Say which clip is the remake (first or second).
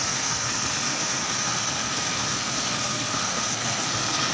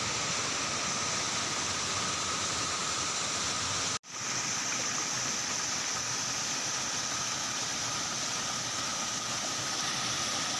first